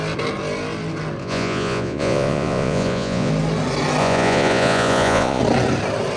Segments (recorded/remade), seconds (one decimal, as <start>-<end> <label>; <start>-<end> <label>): 0.0-1.2 recorded; 1.2-3.3 remade; 3.3-4.0 recorded; 4.0-5.4 remade; 5.4-6.2 recorded